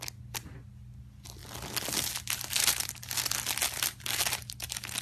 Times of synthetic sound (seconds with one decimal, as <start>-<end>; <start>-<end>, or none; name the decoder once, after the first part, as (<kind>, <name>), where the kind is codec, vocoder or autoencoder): none